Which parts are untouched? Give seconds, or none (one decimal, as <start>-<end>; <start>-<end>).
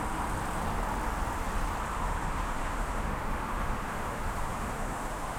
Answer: 0.0-1.9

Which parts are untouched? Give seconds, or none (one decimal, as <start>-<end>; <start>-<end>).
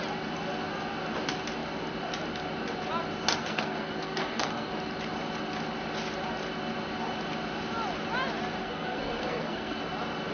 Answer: 0.0-3.4; 4.7-8.6; 9.8-10.3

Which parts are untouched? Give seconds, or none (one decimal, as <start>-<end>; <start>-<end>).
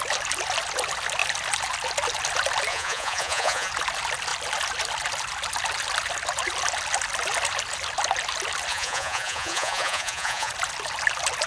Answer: 0.0-2.7; 3.7-8.7; 10.5-11.5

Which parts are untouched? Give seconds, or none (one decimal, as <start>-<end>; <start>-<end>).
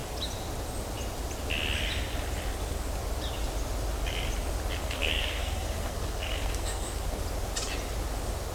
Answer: 0.0-4.8; 7.2-8.5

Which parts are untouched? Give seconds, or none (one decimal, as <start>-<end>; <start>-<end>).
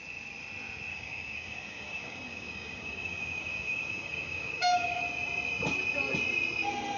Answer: 0.0-0.9; 5.0-7.0